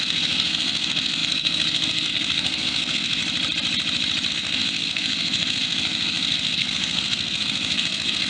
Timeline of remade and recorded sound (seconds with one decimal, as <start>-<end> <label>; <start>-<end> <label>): 0.0-3.2 remade; 3.2-4.3 recorded; 4.3-8.3 remade